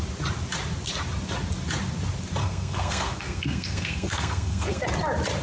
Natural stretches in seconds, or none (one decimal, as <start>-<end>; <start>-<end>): 0.0-2.4; 4.8-5.4